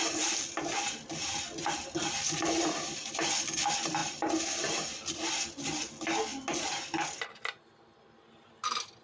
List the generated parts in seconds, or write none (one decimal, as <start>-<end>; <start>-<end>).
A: none